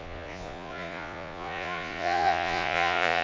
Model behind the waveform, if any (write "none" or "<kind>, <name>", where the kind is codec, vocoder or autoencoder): vocoder, Vocos